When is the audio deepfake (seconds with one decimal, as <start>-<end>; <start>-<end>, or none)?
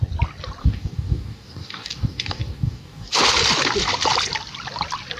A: 0.6-3.2